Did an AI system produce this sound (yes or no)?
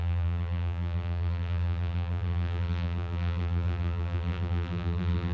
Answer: yes